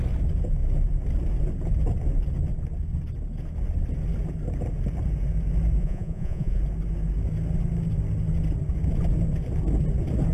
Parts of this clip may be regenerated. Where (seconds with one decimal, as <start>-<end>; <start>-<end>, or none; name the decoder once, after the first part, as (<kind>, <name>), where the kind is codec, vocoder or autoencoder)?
5.8-6.6 (vocoder, Vocos)